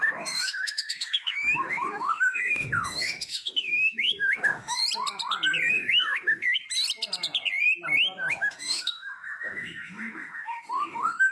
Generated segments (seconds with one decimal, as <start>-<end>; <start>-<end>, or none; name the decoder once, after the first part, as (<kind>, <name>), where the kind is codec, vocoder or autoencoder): 0.0-4.8 (autoencoder, DAC-VAE); 5.7-6.6; 8.3-11.3